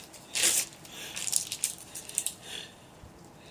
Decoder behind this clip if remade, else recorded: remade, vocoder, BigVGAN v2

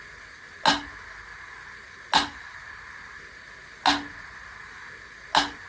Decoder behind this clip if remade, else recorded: recorded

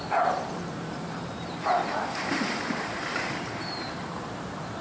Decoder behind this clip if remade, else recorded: remade, vocoder, BigVGAN v2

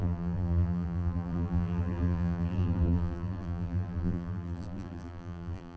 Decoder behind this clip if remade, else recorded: remade, vocoder, BigVGAN v2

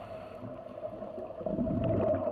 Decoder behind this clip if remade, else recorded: recorded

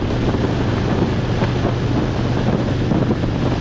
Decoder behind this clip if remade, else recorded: recorded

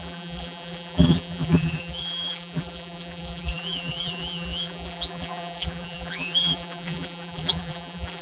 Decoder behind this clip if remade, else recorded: remade, vocoder, BigVGAN v2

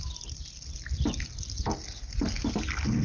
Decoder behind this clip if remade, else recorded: recorded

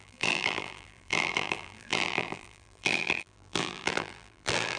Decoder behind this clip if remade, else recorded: remade, vocoder, BigVGAN v2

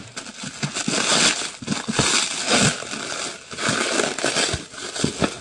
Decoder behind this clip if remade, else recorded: recorded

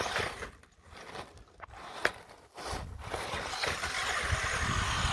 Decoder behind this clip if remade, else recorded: recorded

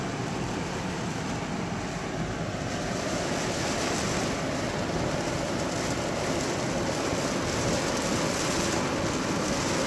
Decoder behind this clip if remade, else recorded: recorded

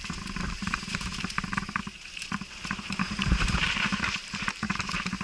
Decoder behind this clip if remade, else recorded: remade, vocoder, BigVGAN v2